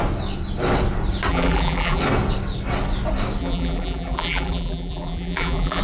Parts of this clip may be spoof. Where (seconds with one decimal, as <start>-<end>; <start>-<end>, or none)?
1.3-2.0; 3.4-5.8